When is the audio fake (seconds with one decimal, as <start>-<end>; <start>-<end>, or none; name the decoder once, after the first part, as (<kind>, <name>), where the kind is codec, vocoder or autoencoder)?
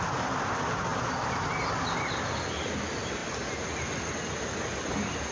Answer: none